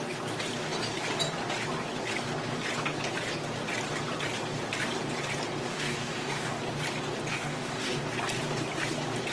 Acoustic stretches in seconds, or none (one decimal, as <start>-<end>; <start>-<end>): 0.0-5.7; 6.6-7.3; 8.0-9.3